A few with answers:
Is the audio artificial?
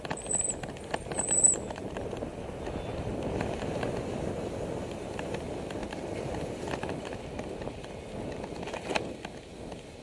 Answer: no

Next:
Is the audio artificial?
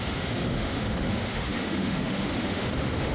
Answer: yes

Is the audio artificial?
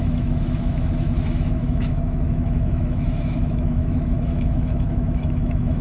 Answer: yes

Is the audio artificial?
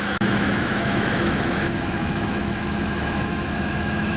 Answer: yes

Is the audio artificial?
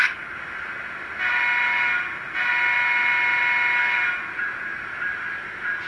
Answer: no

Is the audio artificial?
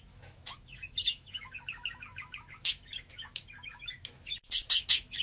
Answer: yes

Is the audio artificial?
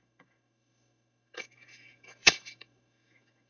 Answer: yes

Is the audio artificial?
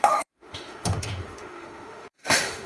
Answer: yes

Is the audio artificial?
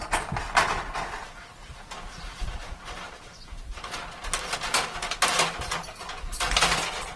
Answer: no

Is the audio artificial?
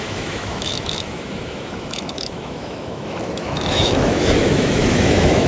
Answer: yes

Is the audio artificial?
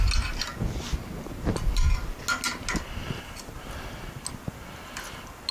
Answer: no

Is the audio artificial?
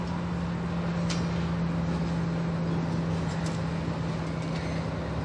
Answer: no